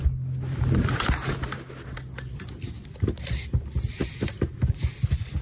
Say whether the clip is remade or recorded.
recorded